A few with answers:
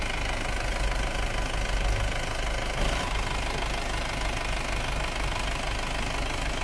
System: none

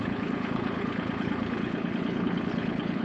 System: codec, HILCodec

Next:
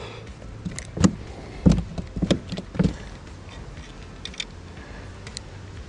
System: none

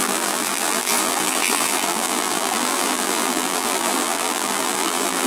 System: vocoder, BigVGAN v2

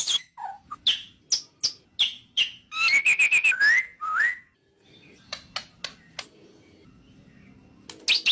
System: none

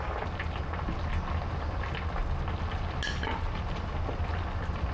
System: none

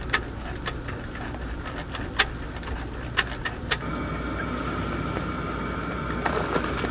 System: none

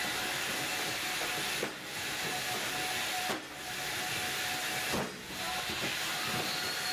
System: none